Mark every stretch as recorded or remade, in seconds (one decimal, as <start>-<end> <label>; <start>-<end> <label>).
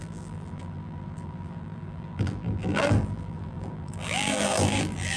0.0-5.2 remade